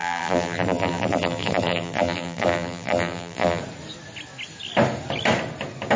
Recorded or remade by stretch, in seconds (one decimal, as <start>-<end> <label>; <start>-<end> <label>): 0.0-3.6 remade; 3.6-6.0 recorded